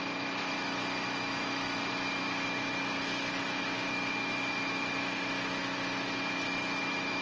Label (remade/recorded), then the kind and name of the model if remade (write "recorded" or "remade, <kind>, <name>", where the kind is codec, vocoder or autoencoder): remade, autoencoder, DAC-VAE